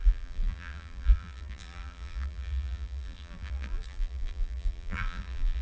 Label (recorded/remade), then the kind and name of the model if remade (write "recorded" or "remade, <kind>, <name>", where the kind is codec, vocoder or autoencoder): remade, vocoder, BigVGAN v2